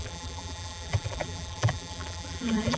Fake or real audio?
fake